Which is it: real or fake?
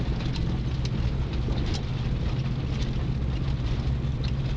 real